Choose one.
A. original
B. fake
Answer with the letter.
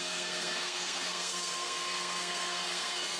B